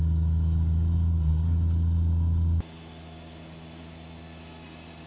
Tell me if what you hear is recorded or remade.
recorded